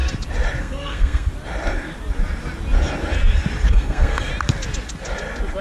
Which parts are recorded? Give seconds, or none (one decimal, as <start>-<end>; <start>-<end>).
0.0-0.6; 1.3-3.7; 4.3-5.6

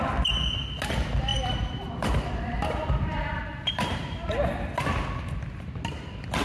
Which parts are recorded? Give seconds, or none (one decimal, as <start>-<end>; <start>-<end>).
0.0-1.3; 4.5-6.4

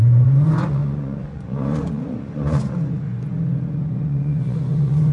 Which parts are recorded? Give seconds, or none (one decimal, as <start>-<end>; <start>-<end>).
none

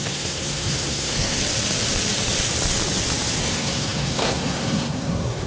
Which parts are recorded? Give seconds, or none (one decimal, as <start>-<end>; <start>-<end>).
1.4-3.4

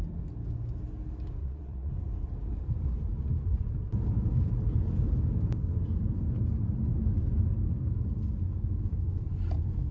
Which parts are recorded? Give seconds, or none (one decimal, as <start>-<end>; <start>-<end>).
0.0-1.4; 1.9-9.9

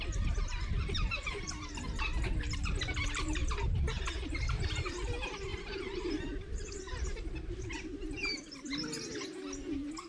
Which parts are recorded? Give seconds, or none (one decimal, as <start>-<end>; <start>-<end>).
0.0-1.1; 4.0-5.5; 7.6-10.1